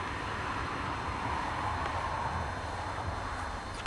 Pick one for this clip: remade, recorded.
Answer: recorded